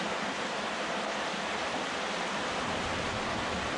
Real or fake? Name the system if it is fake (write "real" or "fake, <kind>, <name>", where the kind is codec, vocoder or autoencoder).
real